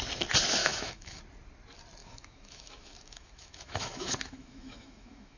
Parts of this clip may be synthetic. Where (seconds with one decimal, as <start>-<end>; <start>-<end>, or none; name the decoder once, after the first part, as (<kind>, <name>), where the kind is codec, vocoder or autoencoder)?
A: 0.6-1.2 (autoencoder, DAC-VAE); 2.0-5.4